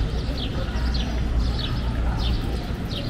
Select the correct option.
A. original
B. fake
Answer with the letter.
A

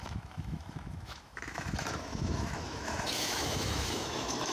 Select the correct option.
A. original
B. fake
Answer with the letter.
B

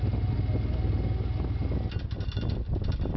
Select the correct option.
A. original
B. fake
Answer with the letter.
A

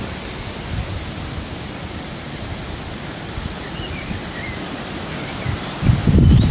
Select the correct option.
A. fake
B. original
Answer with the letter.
B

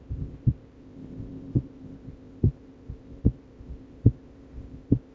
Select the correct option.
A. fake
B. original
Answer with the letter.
A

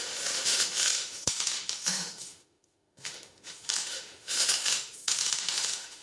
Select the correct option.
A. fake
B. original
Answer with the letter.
A